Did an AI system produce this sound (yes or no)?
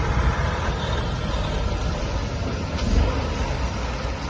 no